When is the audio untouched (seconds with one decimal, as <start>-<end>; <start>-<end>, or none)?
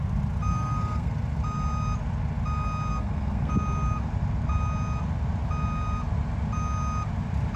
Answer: 0.0-0.5; 1.1-2.9; 3.5-7.6